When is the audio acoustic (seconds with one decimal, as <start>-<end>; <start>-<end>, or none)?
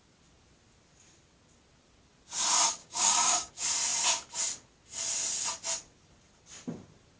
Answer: 0.0-2.8; 3.5-7.2